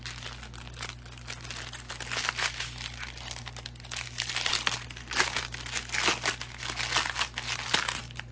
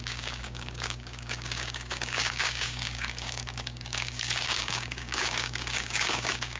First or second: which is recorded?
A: first